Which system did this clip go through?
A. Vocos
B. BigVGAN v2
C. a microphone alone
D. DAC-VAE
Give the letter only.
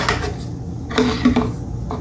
C